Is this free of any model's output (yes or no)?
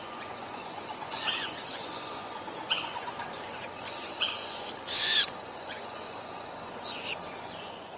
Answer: no